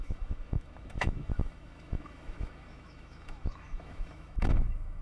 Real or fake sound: fake